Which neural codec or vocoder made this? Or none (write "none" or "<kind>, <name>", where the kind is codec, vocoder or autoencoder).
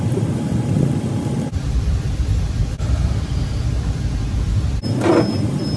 none